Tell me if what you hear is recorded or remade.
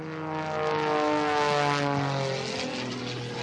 recorded